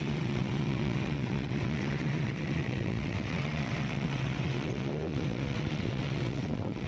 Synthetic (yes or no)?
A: yes